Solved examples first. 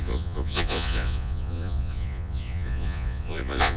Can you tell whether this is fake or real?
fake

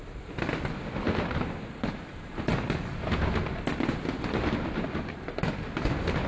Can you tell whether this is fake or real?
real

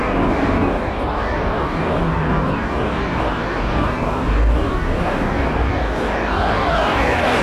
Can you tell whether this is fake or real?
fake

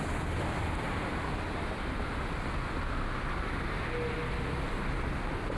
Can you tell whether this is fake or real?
real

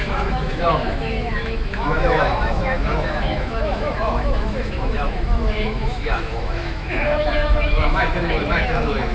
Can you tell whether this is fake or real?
fake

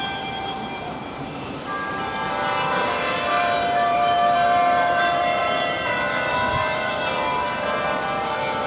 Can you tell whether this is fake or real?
fake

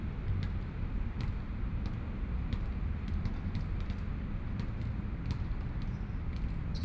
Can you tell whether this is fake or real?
real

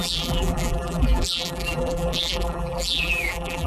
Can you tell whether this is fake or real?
fake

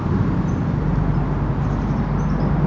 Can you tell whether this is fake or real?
real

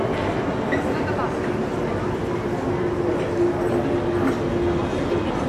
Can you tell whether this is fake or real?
real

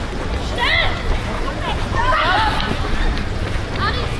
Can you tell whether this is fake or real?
real